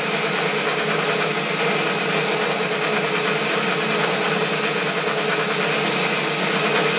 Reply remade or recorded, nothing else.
recorded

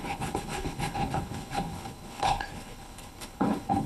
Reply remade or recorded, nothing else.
remade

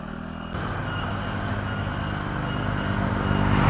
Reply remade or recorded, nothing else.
recorded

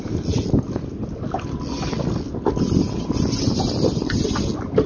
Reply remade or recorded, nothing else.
recorded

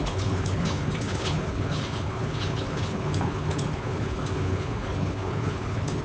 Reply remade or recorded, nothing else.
remade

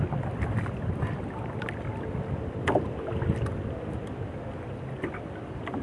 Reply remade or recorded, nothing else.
recorded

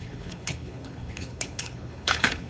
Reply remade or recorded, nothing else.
remade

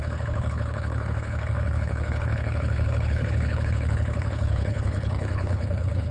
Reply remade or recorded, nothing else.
remade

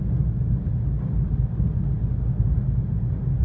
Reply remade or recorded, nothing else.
recorded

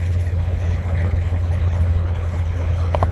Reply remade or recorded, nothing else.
remade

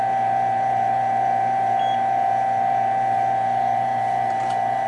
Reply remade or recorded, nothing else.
recorded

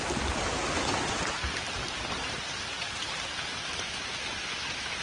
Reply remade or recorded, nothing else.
recorded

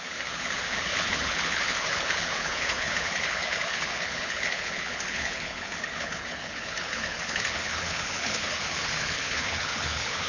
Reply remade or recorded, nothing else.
remade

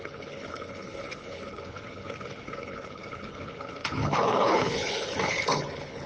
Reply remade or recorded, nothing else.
remade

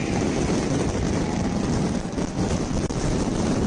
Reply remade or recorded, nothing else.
recorded